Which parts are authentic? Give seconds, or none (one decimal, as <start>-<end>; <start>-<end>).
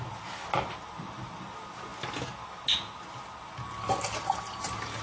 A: 0.0-5.0